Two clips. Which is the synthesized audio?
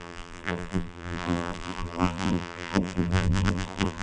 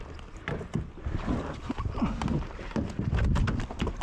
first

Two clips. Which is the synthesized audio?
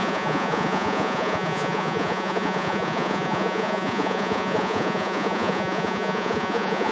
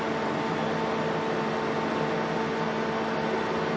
first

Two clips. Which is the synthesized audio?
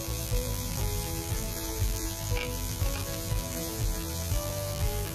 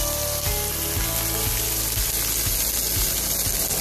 first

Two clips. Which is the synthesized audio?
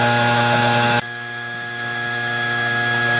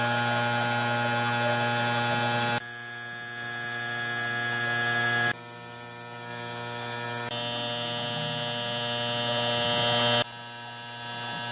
first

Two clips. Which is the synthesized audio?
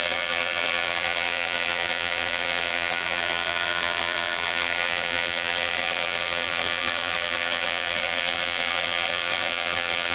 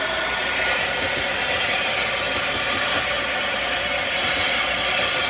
first